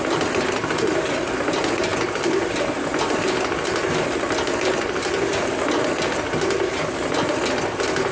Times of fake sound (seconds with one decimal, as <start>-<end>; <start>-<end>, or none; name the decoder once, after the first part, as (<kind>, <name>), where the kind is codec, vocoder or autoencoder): none